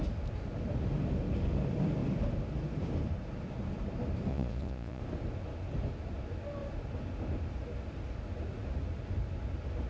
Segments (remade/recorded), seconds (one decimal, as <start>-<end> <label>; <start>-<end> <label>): 0.0-4.3 recorded; 4.3-5.0 remade; 5.0-9.9 recorded

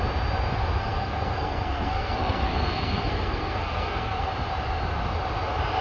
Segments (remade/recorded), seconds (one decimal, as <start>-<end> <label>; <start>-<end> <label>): 0.0-0.8 recorded; 0.8-4.3 remade; 4.3-5.8 recorded

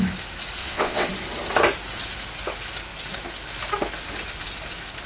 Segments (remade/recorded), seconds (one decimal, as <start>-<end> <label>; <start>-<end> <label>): 0.0-0.6 recorded; 0.6-1.1 remade; 1.1-5.1 recorded